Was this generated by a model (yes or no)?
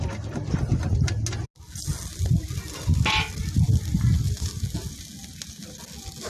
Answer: no